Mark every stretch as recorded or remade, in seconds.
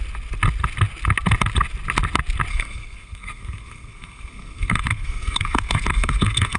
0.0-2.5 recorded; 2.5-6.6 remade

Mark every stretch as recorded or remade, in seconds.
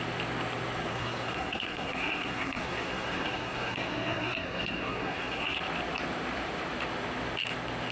0.0-0.9 recorded; 0.9-5.6 remade; 5.6-7.9 recorded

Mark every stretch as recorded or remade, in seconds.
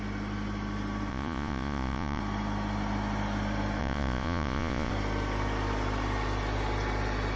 0.0-1.1 recorded; 1.1-2.2 remade; 2.2-3.8 recorded; 3.8-4.9 remade; 4.9-7.4 recorded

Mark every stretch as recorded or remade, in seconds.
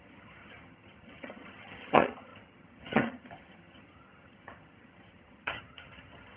0.0-6.4 remade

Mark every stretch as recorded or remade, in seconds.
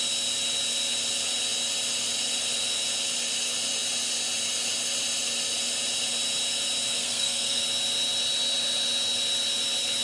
0.0-7.0 recorded; 7.0-7.6 remade; 7.6-10.0 recorded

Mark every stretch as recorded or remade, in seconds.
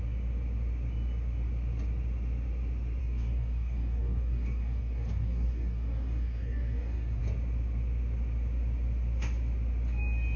0.0-3.0 recorded; 3.0-7.2 remade; 7.2-10.4 recorded